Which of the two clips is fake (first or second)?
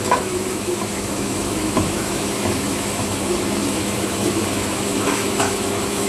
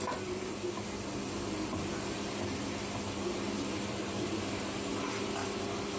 first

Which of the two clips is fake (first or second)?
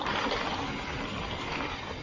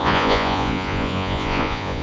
second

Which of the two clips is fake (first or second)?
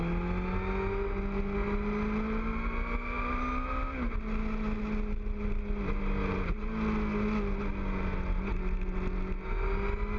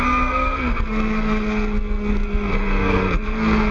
second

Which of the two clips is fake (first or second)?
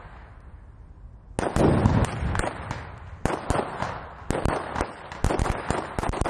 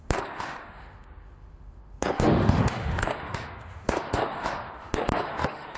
second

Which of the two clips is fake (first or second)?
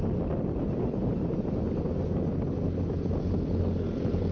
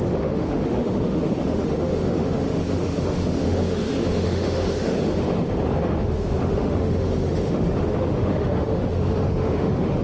second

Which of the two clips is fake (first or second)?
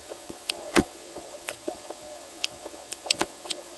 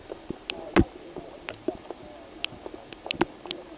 first